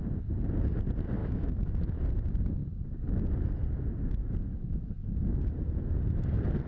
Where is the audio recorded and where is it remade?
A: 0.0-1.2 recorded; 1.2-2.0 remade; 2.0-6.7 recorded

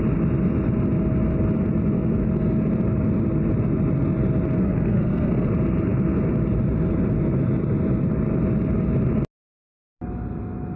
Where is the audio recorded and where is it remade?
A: 0.0-4.6 recorded; 4.6-5.5 remade; 5.5-10.8 recorded

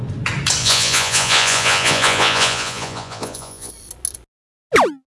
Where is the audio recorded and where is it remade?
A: 0.0-0.6 recorded; 0.6-3.7 remade; 3.7-5.1 recorded

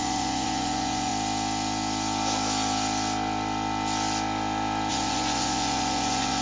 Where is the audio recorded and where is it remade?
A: 0.0-1.1 remade; 1.1-4.9 recorded; 4.9-6.4 remade

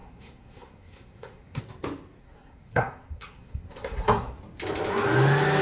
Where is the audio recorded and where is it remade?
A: 0.0-1.6 remade; 1.6-2.2 recorded; 2.2-4.4 remade; 4.4-5.6 recorded

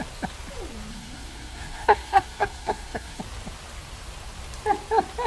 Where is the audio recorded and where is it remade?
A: 0.0-0.9 recorded; 0.9-3.2 remade; 3.2-5.3 recorded